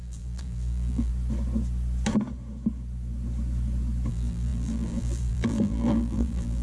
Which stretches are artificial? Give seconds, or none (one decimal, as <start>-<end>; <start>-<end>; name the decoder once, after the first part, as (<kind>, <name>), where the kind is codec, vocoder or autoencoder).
0.0-1.1 (vocoder, BigVGAN v2); 4.1-6.6